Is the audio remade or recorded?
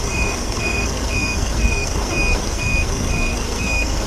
remade